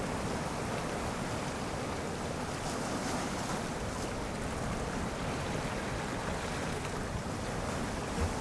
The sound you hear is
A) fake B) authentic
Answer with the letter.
B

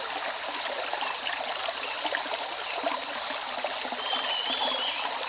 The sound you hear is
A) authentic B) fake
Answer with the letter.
A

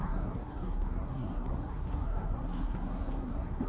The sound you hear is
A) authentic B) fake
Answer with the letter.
B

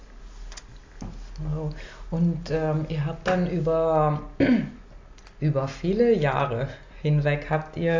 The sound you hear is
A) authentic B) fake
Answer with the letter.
A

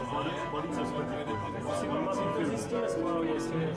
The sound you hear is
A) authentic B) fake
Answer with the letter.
A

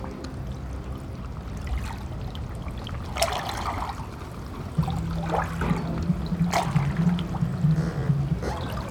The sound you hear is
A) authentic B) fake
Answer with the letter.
A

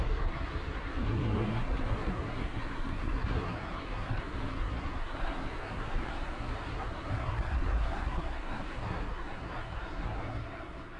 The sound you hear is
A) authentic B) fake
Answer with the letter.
B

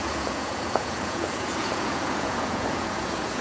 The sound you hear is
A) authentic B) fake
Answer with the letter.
B